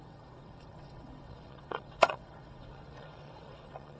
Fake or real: fake